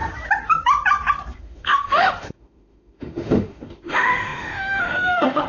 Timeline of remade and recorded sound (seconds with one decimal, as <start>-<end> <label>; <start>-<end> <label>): 0.0-1.4 recorded; 1.4-5.5 remade